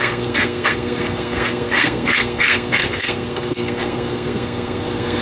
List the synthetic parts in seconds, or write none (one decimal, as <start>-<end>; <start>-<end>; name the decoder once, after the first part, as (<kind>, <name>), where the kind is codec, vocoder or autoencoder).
0.0-5.2 (codec, SNAC)